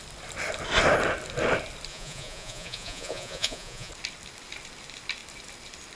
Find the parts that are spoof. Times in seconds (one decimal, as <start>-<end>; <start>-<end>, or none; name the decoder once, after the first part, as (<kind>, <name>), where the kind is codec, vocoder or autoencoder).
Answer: 1.9-3.9 (vocoder, Vocos)